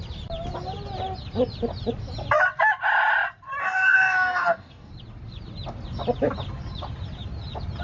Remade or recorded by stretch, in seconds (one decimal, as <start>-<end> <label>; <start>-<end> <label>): 0.0-3.6 recorded; 3.6-4.9 remade; 4.9-7.8 recorded